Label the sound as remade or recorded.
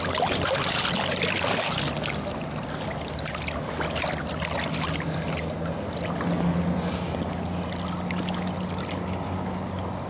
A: recorded